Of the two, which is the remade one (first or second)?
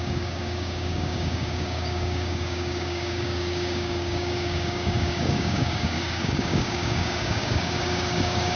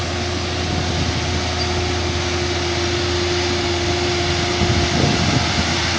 first